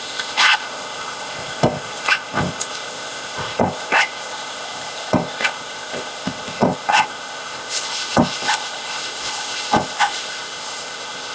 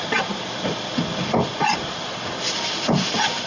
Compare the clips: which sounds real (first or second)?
second